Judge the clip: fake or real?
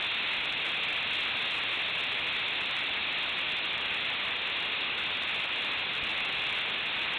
real